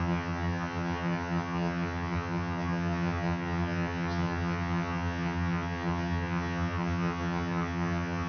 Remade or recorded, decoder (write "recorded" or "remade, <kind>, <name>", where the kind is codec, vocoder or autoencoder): remade, vocoder, HiFi-GAN